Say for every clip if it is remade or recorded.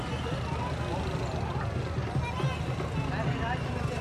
recorded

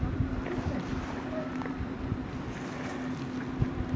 recorded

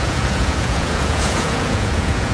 remade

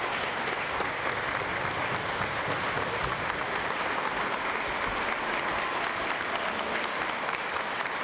recorded